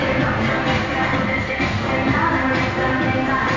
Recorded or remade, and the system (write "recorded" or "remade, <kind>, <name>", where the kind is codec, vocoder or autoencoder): recorded